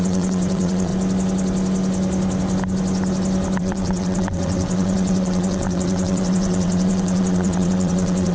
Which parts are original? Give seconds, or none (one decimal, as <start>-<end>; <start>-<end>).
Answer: 0.9-3.6